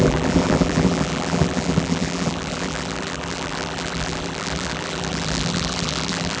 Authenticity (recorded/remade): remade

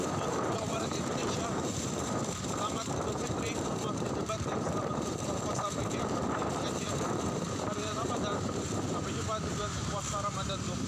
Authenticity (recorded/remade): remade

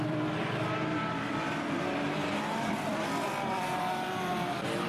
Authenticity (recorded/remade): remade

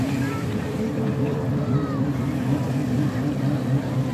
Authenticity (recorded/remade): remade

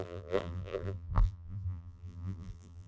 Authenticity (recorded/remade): remade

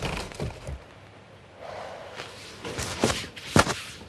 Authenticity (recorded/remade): remade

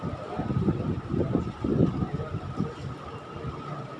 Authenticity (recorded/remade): recorded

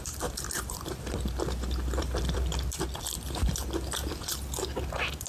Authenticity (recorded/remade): remade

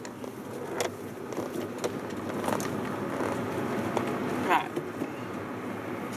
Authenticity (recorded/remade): recorded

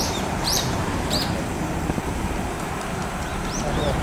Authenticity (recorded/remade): remade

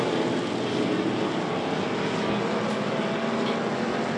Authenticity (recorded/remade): recorded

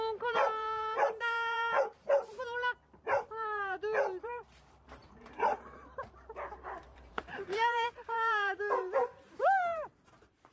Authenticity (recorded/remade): remade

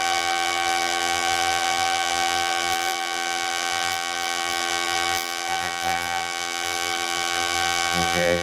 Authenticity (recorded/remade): remade